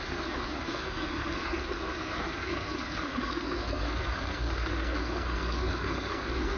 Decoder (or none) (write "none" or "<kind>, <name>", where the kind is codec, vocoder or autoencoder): codec, SNAC